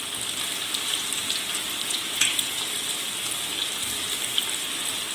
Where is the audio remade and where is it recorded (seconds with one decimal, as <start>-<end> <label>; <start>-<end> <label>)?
0.0-1.9 recorded; 1.9-2.6 remade; 2.6-5.1 recorded